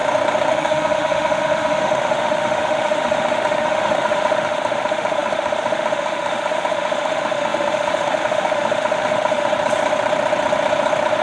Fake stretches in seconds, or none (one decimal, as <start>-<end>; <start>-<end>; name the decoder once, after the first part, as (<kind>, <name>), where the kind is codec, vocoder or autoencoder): 0.5-9.5 (autoencoder, DAC-VAE)